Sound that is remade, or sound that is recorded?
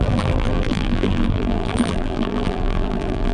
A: remade